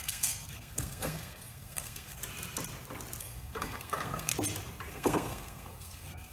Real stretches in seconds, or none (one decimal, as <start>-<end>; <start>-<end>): 2.2-3.2; 4.3-4.9